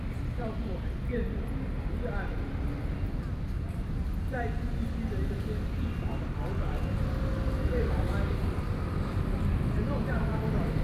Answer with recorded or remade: recorded